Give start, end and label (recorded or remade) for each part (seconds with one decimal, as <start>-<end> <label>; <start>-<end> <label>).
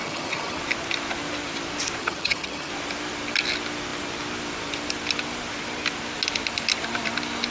0.0-0.6 remade; 0.6-2.0 recorded; 2.0-2.7 remade; 2.7-7.5 recorded